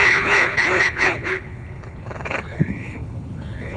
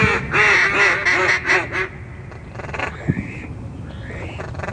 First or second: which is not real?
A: first